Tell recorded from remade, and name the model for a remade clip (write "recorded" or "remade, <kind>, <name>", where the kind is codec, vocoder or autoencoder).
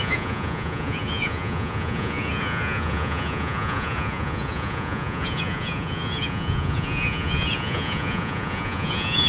remade, vocoder, Vocos